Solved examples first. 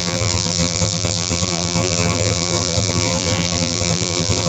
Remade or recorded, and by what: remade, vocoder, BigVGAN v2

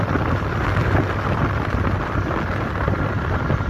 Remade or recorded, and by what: recorded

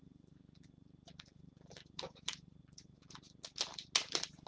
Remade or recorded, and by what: recorded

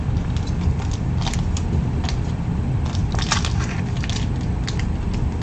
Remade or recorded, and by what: recorded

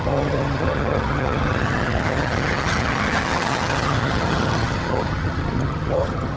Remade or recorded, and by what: remade, vocoder, HiFi-GAN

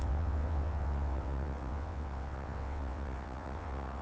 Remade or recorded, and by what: remade, vocoder, WaveNeXt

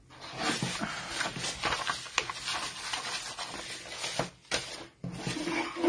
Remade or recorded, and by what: recorded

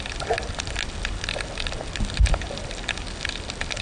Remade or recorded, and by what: remade, vocoder, BigVGAN v2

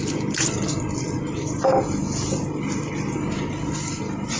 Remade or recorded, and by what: recorded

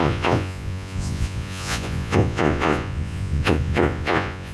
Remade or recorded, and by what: remade, vocoder, Vocos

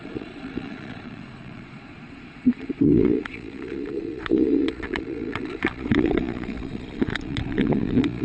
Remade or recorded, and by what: remade, vocoder, Vocos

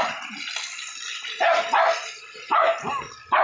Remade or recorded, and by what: recorded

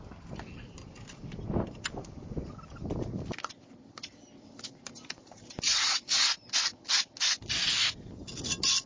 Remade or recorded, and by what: recorded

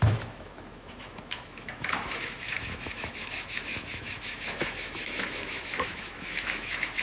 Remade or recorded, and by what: remade, autoencoder, DAC-VAE